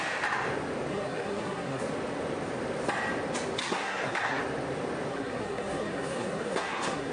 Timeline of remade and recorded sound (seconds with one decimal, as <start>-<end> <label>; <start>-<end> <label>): 0.0-0.9 recorded; 0.9-1.8 remade; 1.8-3.6 recorded; 3.6-4.4 remade; 4.4-5.1 recorded; 5.1-7.1 remade